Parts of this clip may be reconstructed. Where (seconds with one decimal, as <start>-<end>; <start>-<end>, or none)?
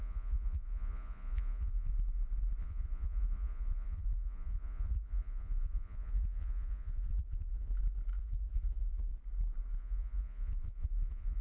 0.0-1.9; 2.6-7.7; 8.2-9.1; 9.8-11.4